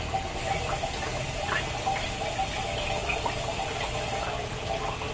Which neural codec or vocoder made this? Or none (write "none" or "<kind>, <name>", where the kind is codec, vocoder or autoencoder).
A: none